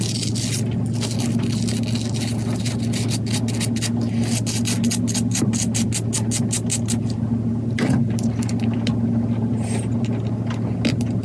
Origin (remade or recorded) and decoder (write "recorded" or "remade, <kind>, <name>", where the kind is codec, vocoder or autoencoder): recorded